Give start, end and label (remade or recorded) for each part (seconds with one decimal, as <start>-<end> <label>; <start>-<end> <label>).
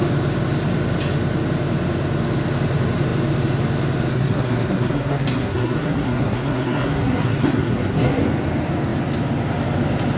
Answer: 0.0-4.1 recorded; 4.1-8.2 remade; 8.2-10.2 recorded